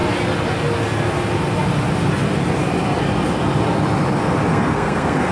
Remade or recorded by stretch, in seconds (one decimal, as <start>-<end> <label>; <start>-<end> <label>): 0.0-4.5 recorded; 4.5-5.3 remade